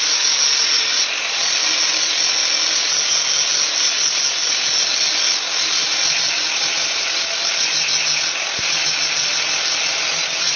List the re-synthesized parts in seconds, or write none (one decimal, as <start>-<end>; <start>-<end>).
none